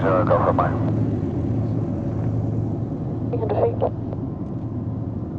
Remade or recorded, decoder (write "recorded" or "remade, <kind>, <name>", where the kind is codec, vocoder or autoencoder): recorded